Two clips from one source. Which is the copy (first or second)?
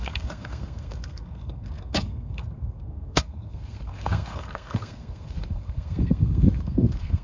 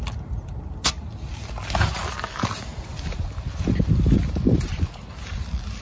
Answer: first